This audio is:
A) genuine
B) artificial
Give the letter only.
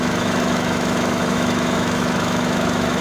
B